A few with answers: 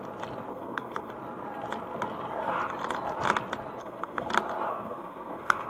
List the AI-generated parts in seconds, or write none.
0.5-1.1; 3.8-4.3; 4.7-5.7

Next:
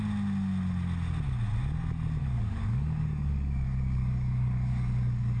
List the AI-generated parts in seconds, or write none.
2.2-5.4

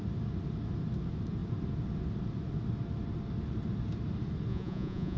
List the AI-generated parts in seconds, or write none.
4.5-5.2

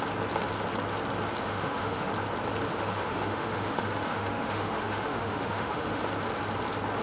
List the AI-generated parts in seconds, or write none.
1.4-2.1; 2.7-6.0

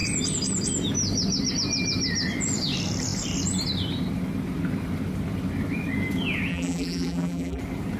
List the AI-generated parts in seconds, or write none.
6.5-7.6

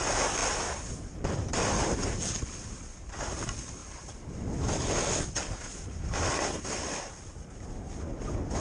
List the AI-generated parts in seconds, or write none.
none

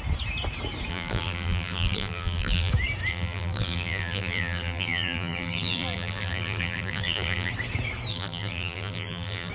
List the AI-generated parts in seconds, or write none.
0.9-2.7; 3.1-7.5; 8.1-9.5